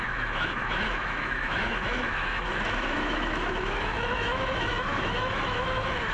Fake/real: fake